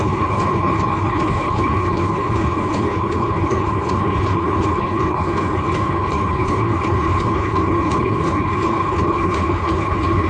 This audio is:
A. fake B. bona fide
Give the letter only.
A